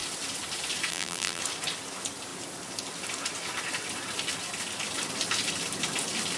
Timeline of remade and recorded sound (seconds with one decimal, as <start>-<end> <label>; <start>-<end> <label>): 0.0-0.9 recorded; 0.9-1.4 remade; 1.4-6.4 recorded